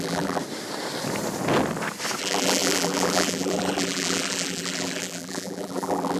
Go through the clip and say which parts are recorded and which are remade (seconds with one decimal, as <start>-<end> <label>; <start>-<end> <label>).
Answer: 0.0-0.4 remade; 0.4-2.2 recorded; 2.2-6.2 remade